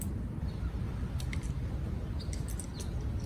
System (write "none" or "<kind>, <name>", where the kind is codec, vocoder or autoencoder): none